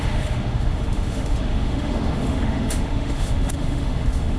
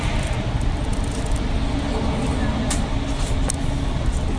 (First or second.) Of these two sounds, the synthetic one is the first